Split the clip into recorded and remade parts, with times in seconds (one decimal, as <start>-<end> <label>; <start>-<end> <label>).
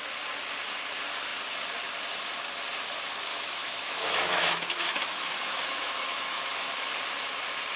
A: 0.0-3.3 recorded; 3.3-6.7 remade; 6.7-7.8 recorded